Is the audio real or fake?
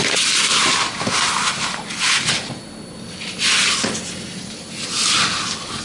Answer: real